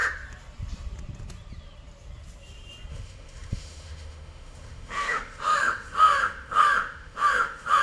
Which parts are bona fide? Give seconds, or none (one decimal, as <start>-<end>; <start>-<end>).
0.0-2.9